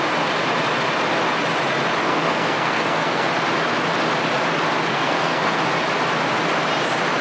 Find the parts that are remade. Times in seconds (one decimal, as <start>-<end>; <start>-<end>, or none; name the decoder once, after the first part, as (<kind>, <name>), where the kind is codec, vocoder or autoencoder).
2.0-3.3 (codec, SNAC); 4.9-5.6